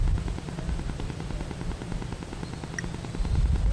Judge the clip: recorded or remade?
recorded